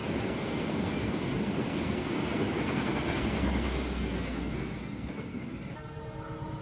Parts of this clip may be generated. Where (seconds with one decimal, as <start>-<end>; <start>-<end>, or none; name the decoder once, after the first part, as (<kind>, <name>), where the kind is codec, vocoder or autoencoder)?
0.0-5.5 (codec, SNAC)